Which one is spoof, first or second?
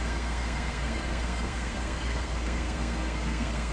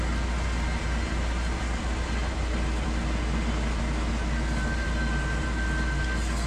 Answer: first